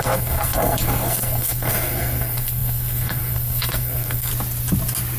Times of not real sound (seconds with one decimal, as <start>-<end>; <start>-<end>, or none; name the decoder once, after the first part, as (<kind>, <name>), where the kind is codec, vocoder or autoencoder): 0.0-4.3 (codec, SNAC)